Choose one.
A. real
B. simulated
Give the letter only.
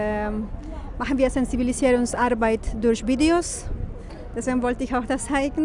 A